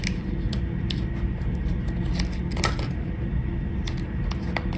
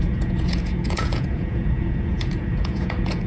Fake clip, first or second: second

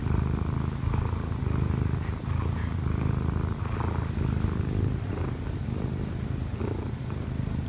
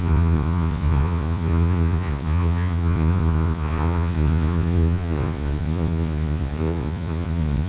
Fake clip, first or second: second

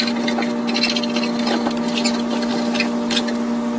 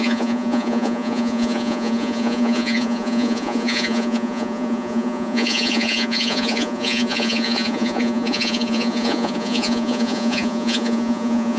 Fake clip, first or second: second